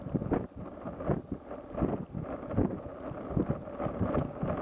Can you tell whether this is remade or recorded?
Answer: recorded